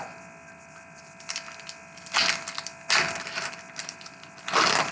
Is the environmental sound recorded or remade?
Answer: recorded